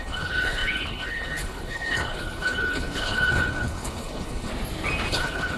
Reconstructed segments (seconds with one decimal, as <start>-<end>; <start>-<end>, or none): 0.0-4.5; 5.1-5.6